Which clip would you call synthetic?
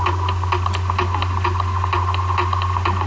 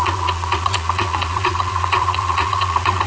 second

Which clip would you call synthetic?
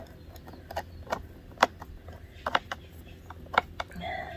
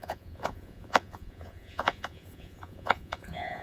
second